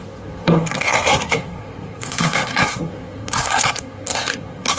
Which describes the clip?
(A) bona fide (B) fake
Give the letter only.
B